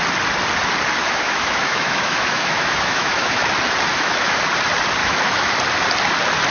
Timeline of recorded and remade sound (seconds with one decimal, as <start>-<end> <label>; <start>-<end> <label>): 0.0-1.0 recorded; 1.0-3.5 remade; 3.5-3.9 recorded; 3.9-4.4 remade; 4.4-5.0 recorded; 5.0-5.5 remade; 5.5-6.5 recorded